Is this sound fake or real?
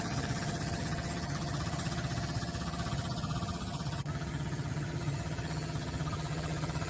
fake